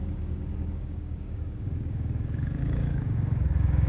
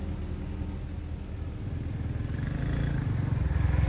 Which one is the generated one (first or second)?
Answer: first